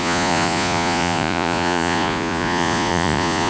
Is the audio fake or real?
fake